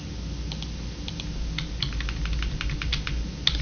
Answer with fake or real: real